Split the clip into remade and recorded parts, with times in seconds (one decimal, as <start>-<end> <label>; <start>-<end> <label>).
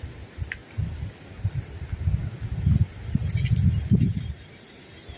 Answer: 0.0-0.6 remade; 0.6-1.4 recorded; 1.4-2.2 remade; 2.2-4.1 recorded; 4.1-5.2 remade